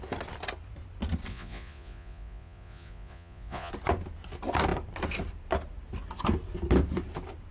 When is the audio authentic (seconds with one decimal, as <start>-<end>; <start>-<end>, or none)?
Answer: 0.0-1.3; 3.7-7.5